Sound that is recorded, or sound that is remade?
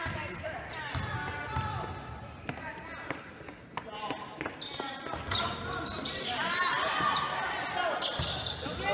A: recorded